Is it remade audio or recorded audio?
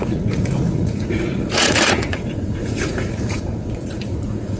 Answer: remade